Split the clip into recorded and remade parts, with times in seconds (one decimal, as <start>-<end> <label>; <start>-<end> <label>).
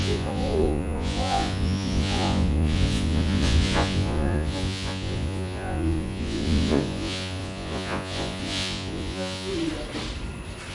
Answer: 0.0-9.5 remade; 9.5-10.7 recorded